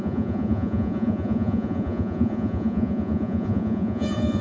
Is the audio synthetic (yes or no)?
yes